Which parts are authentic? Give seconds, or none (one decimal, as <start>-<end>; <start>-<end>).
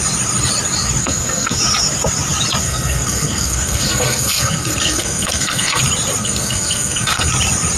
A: 0.0-1.0; 1.6-2.6; 5.8-6.2; 7.3-7.8